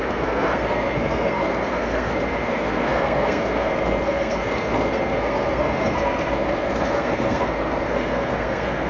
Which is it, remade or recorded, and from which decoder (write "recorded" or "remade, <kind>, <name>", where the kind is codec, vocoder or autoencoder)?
remade, codec, SNAC